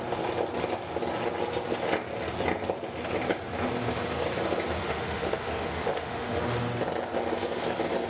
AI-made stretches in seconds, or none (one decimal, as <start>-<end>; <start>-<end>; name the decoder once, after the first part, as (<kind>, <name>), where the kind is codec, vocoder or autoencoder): 4.8-6.4 (autoencoder, DAC-VAE)